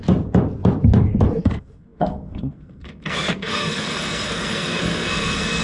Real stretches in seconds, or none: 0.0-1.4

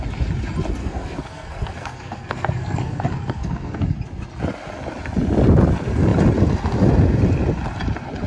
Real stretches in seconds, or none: 0.0-0.8; 3.8-8.3

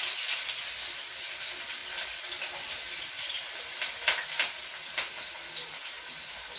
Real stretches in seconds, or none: 0.0-6.6

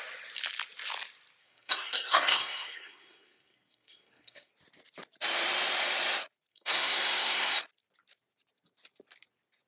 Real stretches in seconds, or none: 0.0-1.4; 4.5-6.5; 7.6-9.7

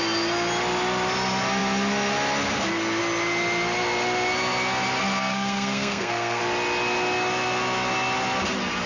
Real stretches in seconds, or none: 0.0-5.2; 6.4-8.9

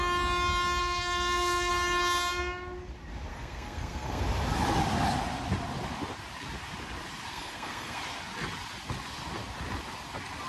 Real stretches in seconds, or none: 0.0-0.8; 1.7-3.3; 4.2-7.3; 8.0-10.5

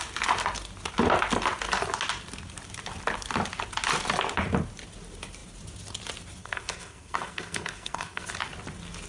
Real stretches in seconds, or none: 0.0-6.4; 8.3-9.1

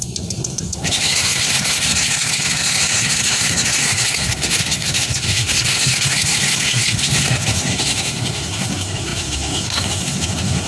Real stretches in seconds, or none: none